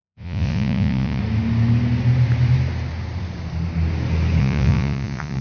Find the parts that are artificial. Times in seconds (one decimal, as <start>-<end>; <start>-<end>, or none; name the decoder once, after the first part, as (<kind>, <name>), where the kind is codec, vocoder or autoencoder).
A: 0.0-1.2 (vocoder, Vocos); 4.4-5.4